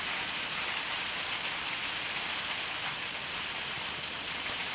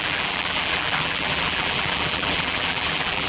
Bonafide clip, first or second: first